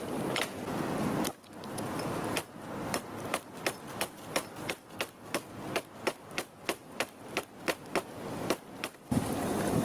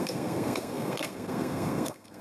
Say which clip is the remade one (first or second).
second